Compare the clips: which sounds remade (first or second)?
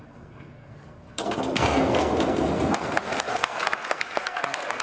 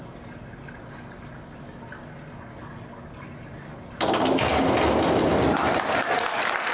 first